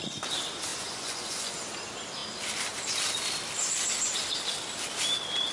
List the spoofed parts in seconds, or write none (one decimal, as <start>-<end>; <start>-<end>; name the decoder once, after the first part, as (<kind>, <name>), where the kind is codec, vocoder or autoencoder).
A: 0.7-1.6 (vocoder, Vocos)